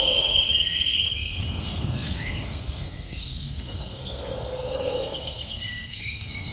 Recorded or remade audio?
remade